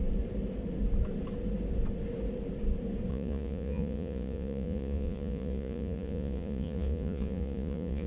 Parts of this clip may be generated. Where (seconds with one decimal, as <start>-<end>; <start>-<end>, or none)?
3.1-8.1